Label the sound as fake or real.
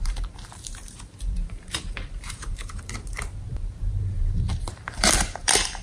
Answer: fake